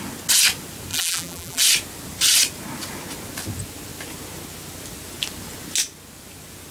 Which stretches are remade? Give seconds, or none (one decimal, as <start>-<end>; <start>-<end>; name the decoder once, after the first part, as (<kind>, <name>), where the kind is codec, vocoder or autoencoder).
0.9-1.6 (vocoder, BigVGAN v2)